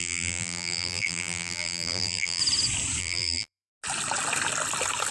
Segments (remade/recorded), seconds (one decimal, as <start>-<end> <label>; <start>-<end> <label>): 0.0-2.4 remade; 2.4-3.0 recorded; 3.0-3.7 remade; 3.7-5.1 recorded